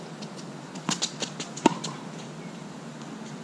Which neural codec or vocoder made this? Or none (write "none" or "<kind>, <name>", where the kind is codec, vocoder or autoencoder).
none